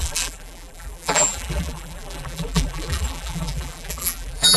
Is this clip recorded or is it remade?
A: remade